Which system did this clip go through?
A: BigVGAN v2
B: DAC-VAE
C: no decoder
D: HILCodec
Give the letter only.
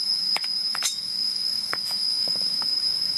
B